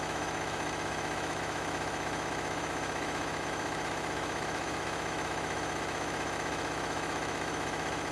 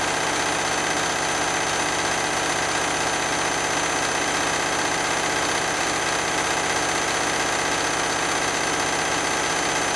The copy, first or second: first